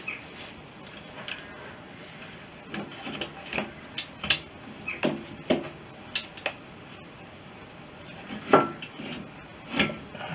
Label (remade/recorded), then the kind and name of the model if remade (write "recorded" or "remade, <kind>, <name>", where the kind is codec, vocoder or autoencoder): recorded